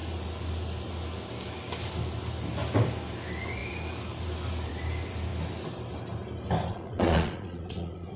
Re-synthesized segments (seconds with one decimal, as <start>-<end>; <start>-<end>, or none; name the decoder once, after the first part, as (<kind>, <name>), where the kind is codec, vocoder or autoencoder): 6.7-8.2 (vocoder, Vocos)